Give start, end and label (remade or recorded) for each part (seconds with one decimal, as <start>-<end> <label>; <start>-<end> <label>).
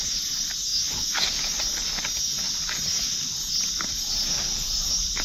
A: 0.0-5.2 recorded